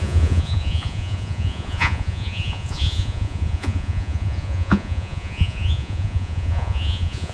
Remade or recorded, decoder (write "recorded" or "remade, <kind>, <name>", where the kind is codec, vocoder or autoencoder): remade, vocoder, Vocos